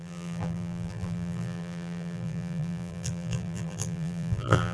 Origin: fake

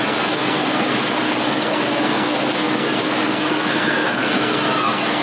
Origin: fake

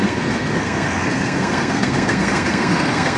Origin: fake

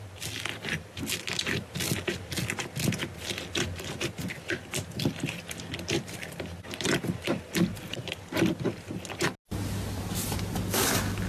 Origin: real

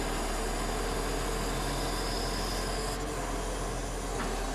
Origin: real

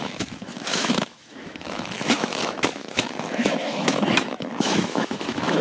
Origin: fake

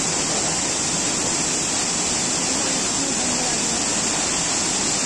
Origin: real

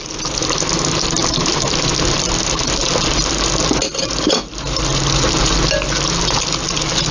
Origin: real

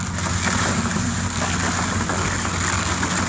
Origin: real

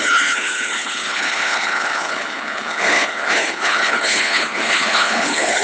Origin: fake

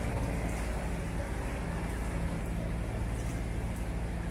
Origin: real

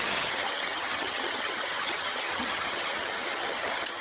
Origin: fake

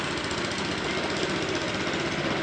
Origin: real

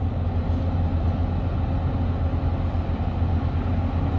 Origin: real